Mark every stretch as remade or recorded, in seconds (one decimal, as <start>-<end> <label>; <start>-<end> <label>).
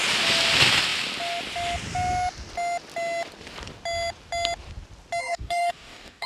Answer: 0.0-5.2 recorded; 5.2-6.3 remade